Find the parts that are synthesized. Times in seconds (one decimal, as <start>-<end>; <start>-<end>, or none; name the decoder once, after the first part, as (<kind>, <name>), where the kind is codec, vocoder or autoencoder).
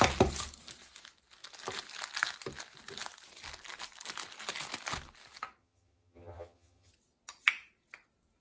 5.6-6.9 (vocoder, HiFi-GAN)